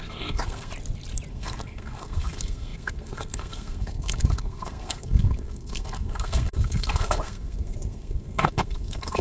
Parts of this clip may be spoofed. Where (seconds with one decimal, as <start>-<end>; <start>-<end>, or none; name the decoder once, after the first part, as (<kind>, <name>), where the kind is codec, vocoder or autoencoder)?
0.0-0.7 (codec, SNAC); 1.3-9.2